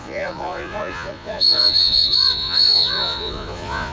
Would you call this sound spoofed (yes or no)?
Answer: yes